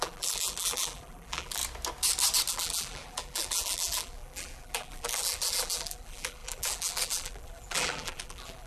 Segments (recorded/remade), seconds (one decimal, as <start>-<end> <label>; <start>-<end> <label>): 0.0-1.6 remade; 1.6-2.5 recorded; 2.5-8.7 remade